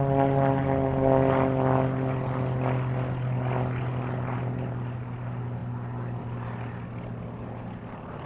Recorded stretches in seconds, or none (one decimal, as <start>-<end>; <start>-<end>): 0.0-8.3